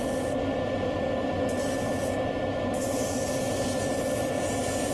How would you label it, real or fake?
real